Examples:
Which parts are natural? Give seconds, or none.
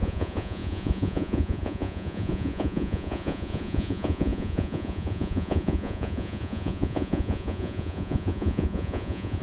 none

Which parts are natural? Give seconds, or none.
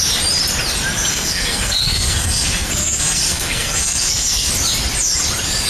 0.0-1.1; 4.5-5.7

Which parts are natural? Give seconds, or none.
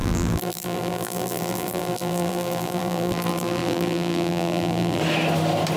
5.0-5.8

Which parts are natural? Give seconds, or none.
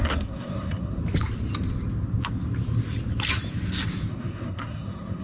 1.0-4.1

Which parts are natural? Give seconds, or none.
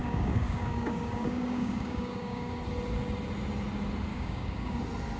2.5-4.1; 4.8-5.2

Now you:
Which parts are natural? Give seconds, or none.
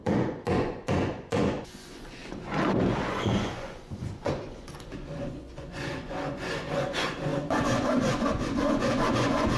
none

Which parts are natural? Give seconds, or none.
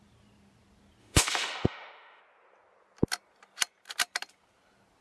0.0-1.0; 2.2-5.0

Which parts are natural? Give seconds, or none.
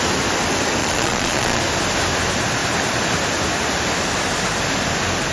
0.0-0.8; 1.6-5.3